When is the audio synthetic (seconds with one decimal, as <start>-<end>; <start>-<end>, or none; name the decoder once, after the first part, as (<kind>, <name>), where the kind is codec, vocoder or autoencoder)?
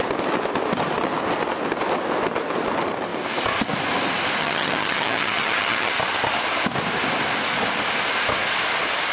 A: 4.4-5.9 (vocoder, HiFi-GAN)